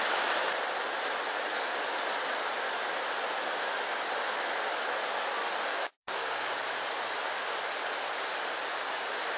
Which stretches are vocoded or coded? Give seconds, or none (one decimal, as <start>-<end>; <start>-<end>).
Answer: 5.7-6.5